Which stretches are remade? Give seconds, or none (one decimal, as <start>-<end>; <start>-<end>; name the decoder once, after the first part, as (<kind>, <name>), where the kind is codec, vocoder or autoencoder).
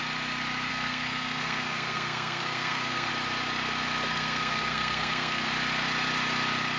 0.7-3.1 (codec, SNAC); 4.1-5.5